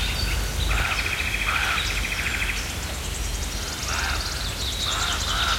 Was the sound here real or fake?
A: real